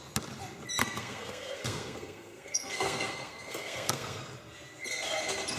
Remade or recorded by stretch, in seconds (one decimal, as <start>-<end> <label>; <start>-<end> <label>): 0.0-0.8 recorded; 0.8-4.2 remade; 4.2-5.6 recorded

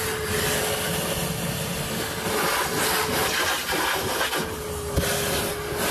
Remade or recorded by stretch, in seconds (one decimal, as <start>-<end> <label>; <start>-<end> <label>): 0.0-5.9 recorded

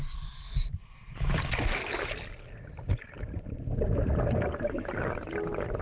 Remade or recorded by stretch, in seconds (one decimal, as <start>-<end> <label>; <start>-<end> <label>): 0.0-5.8 recorded

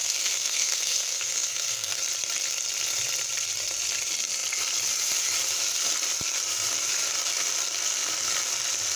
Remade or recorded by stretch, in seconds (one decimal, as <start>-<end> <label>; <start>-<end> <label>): 0.0-2.0 remade; 2.0-9.0 recorded